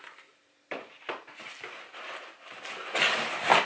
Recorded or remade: recorded